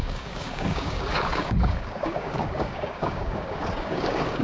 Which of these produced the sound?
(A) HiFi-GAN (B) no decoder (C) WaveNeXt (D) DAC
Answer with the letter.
D